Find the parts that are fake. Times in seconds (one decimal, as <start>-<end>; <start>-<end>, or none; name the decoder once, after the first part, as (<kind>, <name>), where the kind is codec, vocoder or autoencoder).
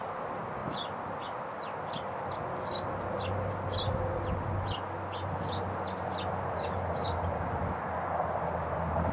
none